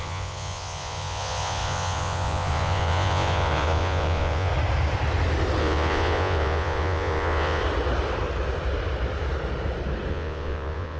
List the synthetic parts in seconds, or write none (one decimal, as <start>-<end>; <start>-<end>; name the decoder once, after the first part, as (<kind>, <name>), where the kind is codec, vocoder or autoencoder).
0.0-4.5 (vocoder, Vocos); 5.6-7.6; 10.1-11.0